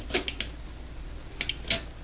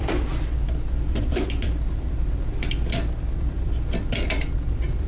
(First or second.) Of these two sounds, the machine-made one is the second